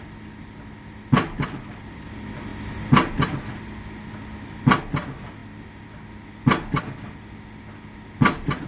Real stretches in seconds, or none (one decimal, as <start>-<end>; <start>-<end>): 0.0-8.7